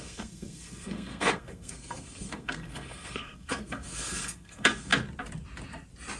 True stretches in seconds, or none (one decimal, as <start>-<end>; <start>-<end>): 4.9-6.2